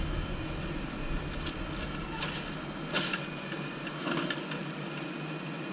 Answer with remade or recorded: recorded